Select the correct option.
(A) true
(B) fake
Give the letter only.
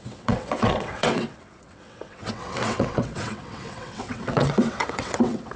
B